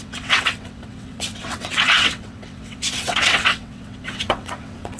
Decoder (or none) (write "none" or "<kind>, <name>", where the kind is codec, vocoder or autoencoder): vocoder, WaveNeXt